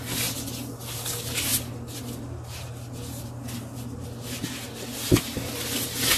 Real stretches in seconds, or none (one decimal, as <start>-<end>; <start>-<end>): 0.0-6.2